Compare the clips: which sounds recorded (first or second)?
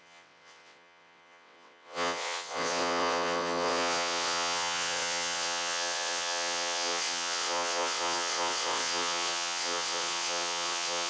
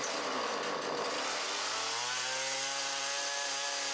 second